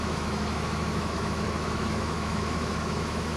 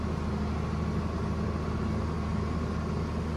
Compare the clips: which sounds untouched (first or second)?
second